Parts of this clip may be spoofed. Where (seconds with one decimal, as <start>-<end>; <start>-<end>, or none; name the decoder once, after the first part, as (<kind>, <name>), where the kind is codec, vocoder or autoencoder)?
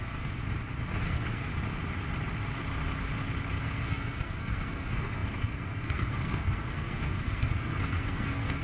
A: 0.0-0.4 (codec, SNAC); 1.0-1.5; 3.6-8.6